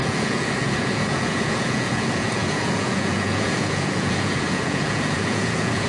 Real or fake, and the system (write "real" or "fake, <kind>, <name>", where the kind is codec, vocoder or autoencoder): fake, vocoder, Vocos